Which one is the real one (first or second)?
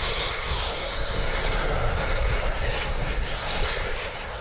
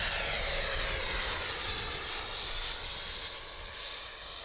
second